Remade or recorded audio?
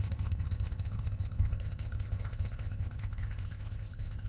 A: remade